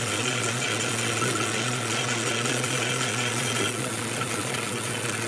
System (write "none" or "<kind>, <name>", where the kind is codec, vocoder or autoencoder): vocoder, Vocos